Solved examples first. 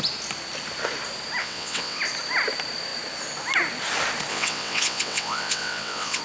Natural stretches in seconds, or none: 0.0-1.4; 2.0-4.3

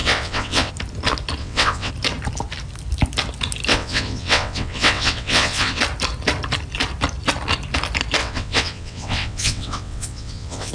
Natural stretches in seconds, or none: 0.7-1.4; 1.9-3.7; 5.8-8.2

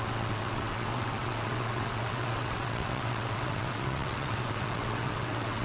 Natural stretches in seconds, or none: none

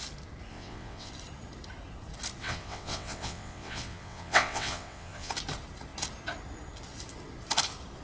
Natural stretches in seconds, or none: 0.0-0.5; 1.1-2.4; 5.3-8.0

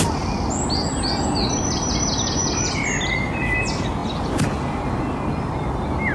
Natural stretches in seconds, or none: 0.0-6.1

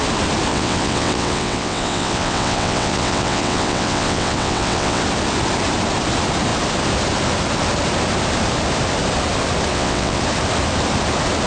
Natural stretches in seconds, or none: 0.0-0.5; 5.0-9.7; 10.2-11.5